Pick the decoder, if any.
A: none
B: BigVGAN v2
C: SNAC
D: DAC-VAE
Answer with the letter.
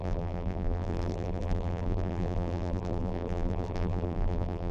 B